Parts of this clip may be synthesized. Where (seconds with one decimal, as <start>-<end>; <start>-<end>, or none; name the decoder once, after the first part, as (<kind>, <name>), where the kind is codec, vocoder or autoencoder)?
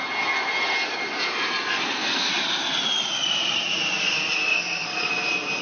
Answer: 1.7-2.3 (codec, SNAC); 4.5-5.1